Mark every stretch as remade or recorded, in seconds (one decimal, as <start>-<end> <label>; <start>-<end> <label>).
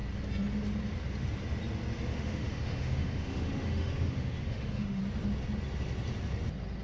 0.0-2.1 recorded; 2.1-5.0 remade; 5.0-6.8 recorded